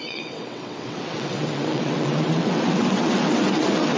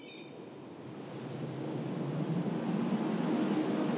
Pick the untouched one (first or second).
second